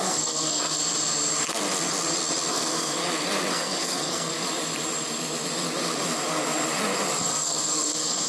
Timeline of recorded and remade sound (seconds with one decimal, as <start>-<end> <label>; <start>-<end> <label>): 0.0-0.8 remade; 0.8-2.5 recorded; 2.5-3.0 remade; 3.0-3.5 recorded; 3.5-4.3 remade; 4.3-7.2 recorded; 7.2-8.3 remade